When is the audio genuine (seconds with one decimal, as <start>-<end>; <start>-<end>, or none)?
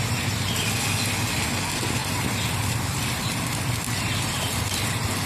0.0-2.0